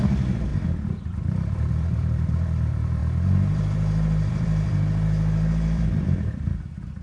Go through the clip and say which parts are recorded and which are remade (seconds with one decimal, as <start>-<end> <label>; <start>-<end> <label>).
0.0-0.5 remade; 0.5-1.0 recorded; 1.0-7.0 remade